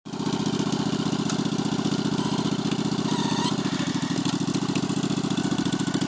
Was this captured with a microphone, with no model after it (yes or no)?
yes